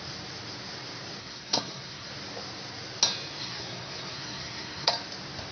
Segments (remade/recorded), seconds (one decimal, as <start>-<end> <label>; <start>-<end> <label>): 0.0-1.2 recorded; 1.2-2.1 remade; 2.1-3.4 recorded; 3.4-4.9 remade; 4.9-5.5 recorded